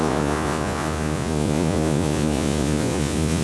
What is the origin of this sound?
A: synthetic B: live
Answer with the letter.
A